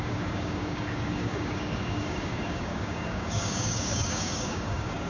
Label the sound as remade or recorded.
remade